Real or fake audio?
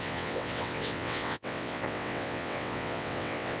fake